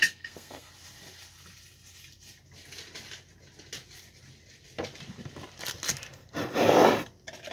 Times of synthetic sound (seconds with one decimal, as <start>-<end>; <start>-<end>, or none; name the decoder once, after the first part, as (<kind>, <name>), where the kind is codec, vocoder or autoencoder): 0.0-0.7 (codec, SNAC)